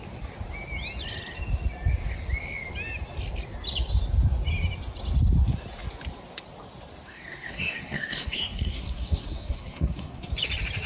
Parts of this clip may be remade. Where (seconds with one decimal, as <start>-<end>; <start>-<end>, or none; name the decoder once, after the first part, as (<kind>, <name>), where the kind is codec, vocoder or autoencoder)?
7.1-10.3 (codec, SNAC)